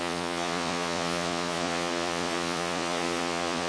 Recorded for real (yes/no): no